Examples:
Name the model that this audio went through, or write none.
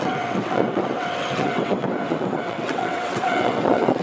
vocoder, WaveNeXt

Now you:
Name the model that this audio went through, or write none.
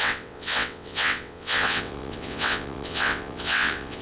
vocoder, WaveNeXt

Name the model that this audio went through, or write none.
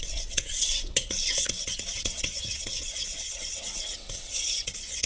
vocoder, WaveNeXt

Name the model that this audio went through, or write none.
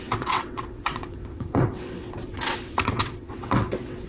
vocoder, WaveNeXt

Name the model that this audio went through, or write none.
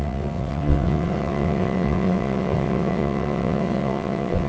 vocoder, WaveNeXt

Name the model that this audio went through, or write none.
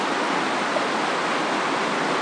none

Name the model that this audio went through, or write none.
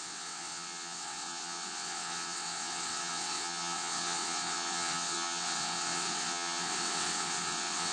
vocoder, WaveNeXt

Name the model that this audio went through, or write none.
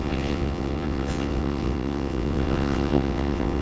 vocoder, WaveNeXt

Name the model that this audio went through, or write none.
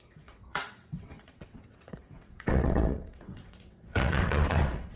vocoder, WaveNeXt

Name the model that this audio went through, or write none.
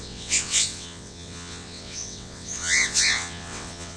vocoder, WaveNeXt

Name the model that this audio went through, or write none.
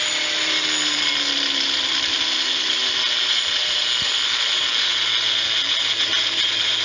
none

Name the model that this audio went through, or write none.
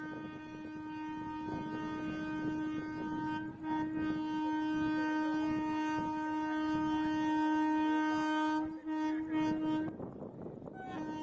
none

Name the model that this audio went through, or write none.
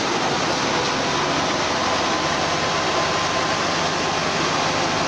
none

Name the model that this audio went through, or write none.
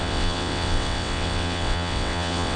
vocoder, WaveNeXt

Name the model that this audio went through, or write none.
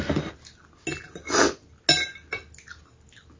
none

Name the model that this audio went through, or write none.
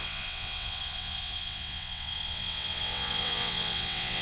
vocoder, WaveNeXt